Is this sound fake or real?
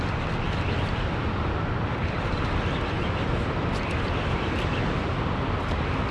real